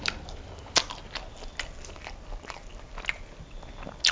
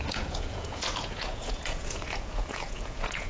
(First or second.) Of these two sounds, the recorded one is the first